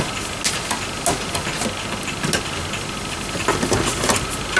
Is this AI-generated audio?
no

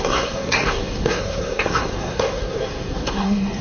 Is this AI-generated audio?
yes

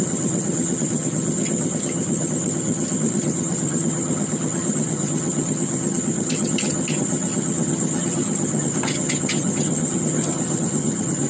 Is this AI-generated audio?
yes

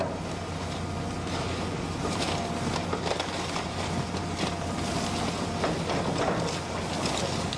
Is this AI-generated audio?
no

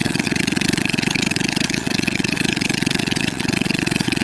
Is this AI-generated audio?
yes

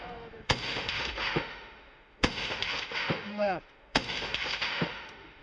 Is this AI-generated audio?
yes